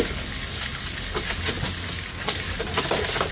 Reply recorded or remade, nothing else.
recorded